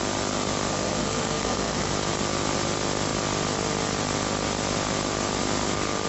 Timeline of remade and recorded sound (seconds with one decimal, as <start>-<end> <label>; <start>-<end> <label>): 0.0-0.7 recorded; 0.7-1.9 remade; 1.9-6.1 recorded